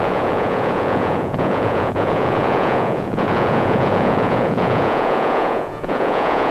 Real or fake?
fake